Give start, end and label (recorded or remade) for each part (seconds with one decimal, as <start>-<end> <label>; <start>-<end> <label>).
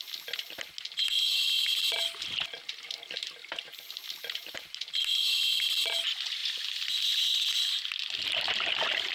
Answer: 0.0-3.4 recorded; 3.4-5.3 remade; 5.3-9.1 recorded